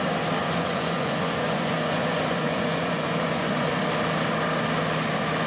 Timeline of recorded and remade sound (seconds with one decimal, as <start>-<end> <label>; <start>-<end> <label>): 0.0-0.4 recorded; 0.4-3.7 remade; 3.7-5.5 recorded